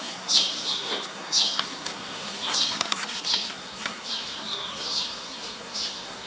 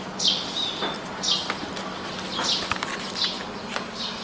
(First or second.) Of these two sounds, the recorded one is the second